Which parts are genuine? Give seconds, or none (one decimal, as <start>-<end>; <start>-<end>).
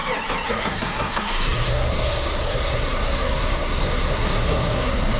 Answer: 0.0-0.5